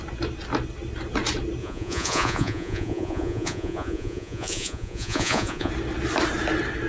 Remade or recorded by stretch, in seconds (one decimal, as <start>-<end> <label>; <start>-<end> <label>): 0.0-1.6 recorded; 1.6-5.7 remade; 5.7-6.9 recorded